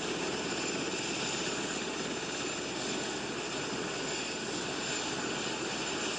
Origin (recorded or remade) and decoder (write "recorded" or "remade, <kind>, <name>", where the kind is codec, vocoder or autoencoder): recorded